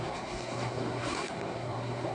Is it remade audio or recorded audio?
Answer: remade